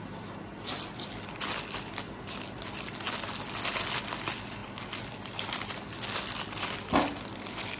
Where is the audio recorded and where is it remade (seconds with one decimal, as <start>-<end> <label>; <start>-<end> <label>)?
0.0-7.8 recorded